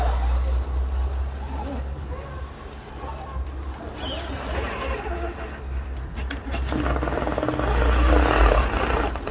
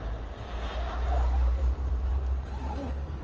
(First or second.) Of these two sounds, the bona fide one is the first